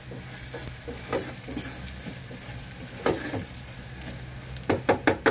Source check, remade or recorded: recorded